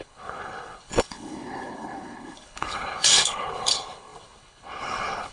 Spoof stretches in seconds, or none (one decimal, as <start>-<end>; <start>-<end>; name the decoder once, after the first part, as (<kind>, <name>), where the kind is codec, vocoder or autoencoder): 0.0-5.3 (codec, HILCodec)